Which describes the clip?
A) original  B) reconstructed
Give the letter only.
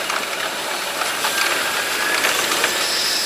A